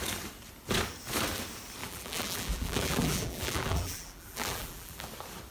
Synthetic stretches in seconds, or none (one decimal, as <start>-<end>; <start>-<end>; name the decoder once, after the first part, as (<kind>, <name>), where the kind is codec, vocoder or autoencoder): 1.8-5.1 (vocoder, BigVGAN v2)